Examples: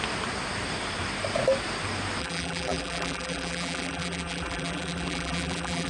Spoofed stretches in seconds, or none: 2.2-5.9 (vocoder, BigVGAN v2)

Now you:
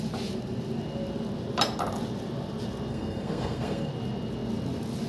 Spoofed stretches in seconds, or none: 2.9-3.9 (codec, SNAC)

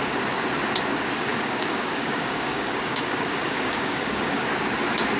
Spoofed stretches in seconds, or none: 1.3-4.4 (codec, DAC)

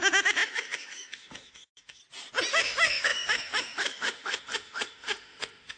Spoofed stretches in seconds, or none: 0.0-2.0 (autoencoder, DAC-VAE); 2.5-5.8

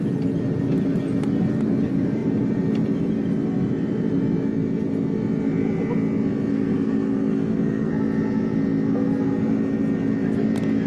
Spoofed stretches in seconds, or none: 6.5-7.9 (codec, SNAC)

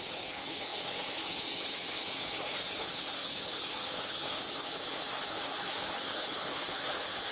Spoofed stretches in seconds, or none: 0.0-7.3 (codec, HILCodec)

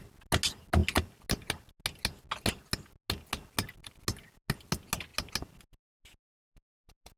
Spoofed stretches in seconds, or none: none

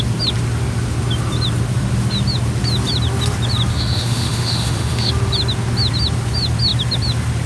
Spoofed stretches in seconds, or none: 3.7-5.1 (autoencoder, DAC-VAE)